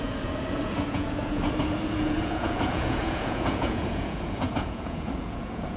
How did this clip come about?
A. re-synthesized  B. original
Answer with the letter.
A